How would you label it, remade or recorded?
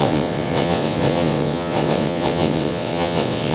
remade